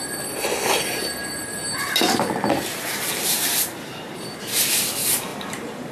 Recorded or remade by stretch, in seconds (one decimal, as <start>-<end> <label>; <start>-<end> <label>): 0.0-1.5 recorded; 1.5-4.5 remade; 4.5-5.3 recorded; 5.3-5.9 remade